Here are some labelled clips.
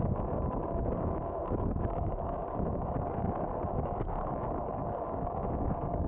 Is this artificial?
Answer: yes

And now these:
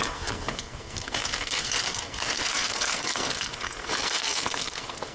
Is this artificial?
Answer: yes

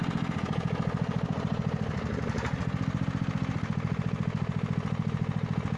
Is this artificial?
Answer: no